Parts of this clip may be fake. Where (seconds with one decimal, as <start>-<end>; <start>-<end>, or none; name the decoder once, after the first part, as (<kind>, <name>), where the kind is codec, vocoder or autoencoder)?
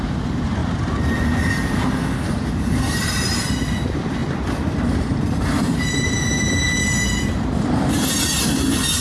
0.0-0.6 (vocoder, BigVGAN v2); 2.2-4.2; 5.4-9.0